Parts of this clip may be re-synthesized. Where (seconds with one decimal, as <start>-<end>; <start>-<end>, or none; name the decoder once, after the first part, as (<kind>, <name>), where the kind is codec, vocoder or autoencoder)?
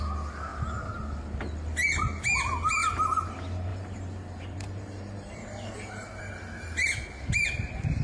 3.7-6.2 (vocoder, BigVGAN v2)